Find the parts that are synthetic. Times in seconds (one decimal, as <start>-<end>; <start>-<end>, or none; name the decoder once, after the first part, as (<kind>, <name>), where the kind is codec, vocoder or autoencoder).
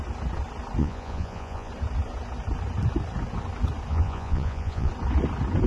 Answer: 0.8-1.7 (vocoder, Vocos); 3.9-4.9